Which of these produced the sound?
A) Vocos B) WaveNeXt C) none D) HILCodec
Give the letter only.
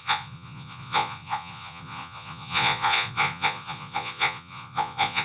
A